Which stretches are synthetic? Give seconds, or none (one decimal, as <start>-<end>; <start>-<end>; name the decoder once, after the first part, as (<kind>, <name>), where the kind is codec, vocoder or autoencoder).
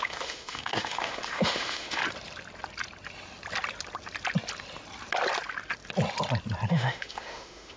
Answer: 0.0-2.0 (autoencoder, DAC-VAE); 6.7-7.8